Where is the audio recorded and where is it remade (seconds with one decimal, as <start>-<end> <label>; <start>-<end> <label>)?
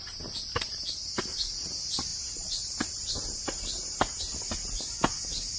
0.0-2.1 recorded; 2.1-4.2 remade; 4.2-5.6 recorded